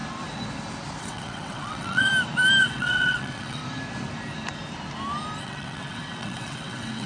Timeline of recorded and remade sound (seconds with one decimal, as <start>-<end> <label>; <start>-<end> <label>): 0.0-1.0 recorded; 1.0-2.1 remade; 2.1-2.6 recorded; 2.6-3.6 remade; 3.6-5.4 recorded; 5.4-7.1 remade